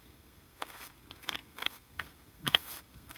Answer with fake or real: fake